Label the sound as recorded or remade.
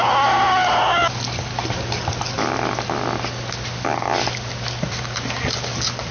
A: recorded